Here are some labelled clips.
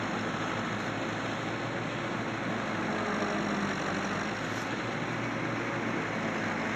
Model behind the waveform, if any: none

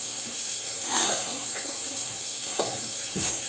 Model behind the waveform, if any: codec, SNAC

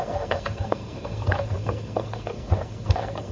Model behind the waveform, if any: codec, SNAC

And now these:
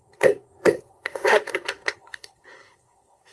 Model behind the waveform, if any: codec, SNAC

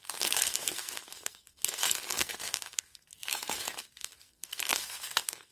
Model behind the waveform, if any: codec, SNAC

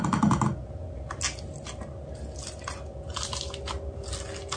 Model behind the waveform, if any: none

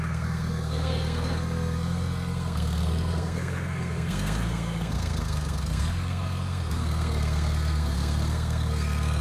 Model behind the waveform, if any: codec, SNAC